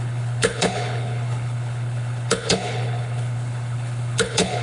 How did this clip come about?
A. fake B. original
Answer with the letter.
A